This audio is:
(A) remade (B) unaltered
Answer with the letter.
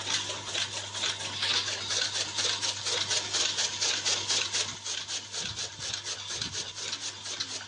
B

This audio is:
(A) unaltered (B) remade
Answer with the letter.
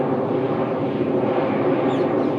A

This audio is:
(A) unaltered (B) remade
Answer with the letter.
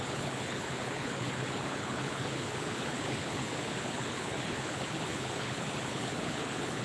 B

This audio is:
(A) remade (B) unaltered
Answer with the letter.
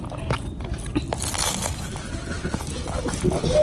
B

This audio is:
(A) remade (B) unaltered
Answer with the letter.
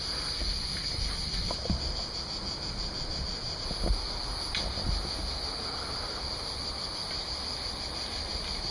B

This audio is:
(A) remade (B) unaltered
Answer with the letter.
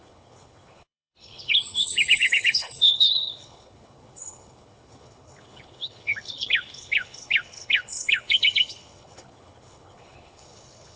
A